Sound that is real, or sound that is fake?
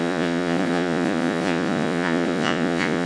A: fake